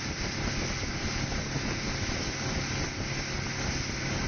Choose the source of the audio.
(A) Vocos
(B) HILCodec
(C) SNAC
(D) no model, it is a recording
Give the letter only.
D